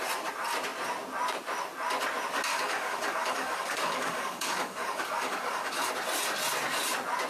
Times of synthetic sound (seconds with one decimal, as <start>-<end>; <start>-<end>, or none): 2.5-5.9